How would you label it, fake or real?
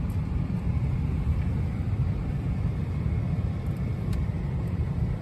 fake